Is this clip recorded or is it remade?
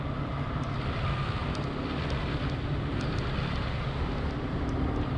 remade